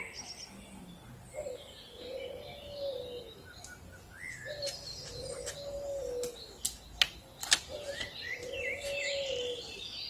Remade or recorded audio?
recorded